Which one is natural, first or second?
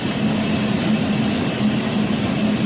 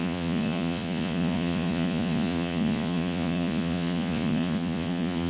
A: first